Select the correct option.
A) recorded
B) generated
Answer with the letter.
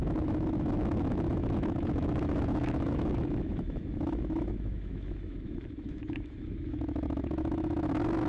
B